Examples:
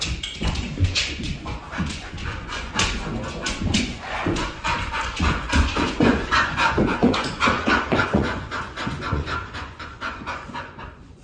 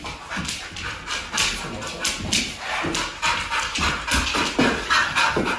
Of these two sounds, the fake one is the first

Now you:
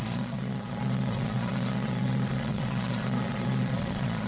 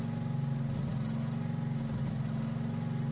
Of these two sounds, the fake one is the first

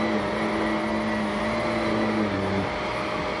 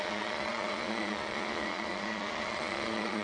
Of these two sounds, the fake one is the second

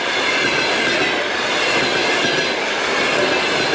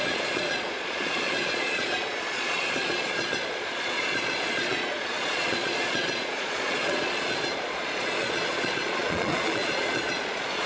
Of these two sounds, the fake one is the second